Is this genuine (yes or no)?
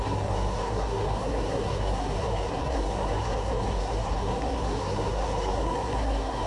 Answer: no